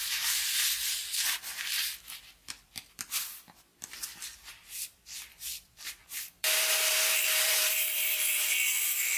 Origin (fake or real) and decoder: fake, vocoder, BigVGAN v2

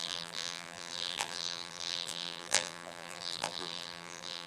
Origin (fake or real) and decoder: fake, vocoder, BigVGAN v2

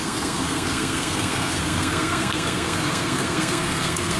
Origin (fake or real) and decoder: fake, codec, SNAC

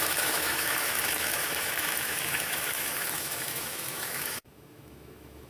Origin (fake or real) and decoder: fake, autoencoder, DAC-VAE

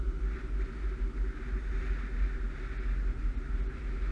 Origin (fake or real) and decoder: real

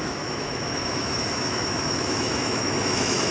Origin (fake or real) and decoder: fake, autoencoder, DAC-VAE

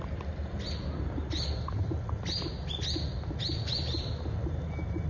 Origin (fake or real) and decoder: real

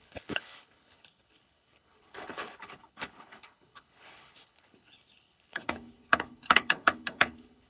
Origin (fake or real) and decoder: fake, codec, HILCodec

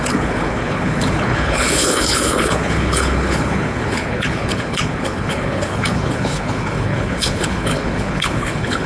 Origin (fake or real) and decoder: fake, codec, HILCodec